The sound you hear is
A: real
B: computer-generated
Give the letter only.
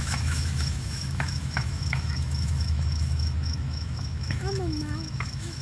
B